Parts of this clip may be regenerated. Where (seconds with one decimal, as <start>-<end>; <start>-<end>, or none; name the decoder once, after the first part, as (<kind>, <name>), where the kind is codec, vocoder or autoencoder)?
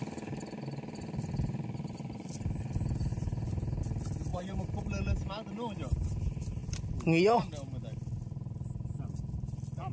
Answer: 3.1-3.8 (vocoder, BigVGAN v2); 4.3-4.8